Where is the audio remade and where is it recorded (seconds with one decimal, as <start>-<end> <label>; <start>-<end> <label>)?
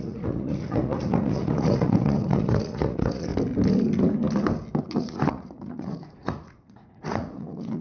0.0-3.3 remade; 3.3-4.8 recorded; 4.8-7.8 remade